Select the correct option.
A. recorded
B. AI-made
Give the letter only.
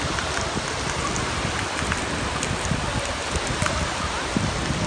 B